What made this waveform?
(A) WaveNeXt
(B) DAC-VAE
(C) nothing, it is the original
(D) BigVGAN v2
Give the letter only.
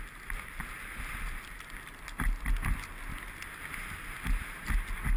C